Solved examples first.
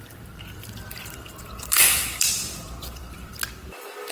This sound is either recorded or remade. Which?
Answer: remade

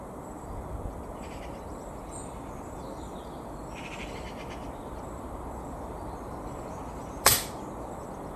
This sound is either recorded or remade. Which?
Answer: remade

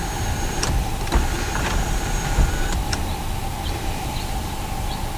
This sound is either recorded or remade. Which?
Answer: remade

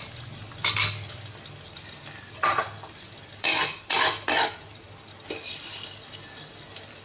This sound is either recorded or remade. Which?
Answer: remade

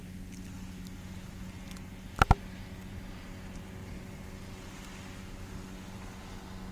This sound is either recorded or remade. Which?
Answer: recorded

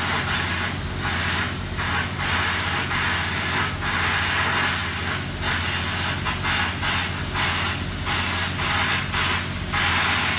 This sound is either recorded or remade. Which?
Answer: recorded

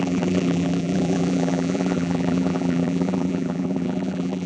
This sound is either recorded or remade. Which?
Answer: remade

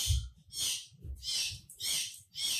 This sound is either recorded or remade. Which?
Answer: recorded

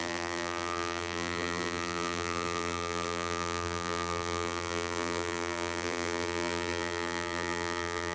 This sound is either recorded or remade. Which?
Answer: remade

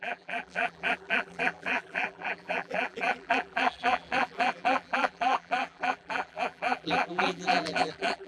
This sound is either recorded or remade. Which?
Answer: remade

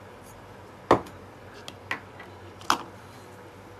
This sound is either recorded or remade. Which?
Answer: recorded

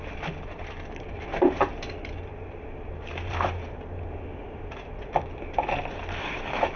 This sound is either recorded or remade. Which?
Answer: remade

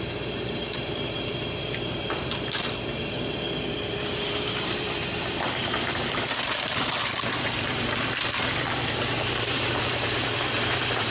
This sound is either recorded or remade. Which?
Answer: remade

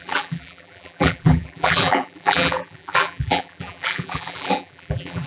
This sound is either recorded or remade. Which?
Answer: remade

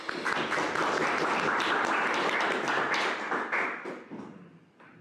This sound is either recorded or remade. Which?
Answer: remade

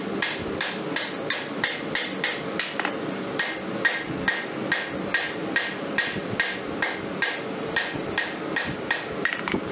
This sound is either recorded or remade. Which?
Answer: remade